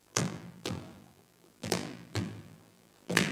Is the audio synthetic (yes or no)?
yes